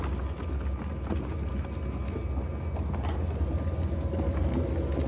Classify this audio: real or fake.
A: real